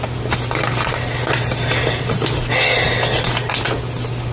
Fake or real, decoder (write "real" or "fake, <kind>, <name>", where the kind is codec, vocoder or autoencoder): real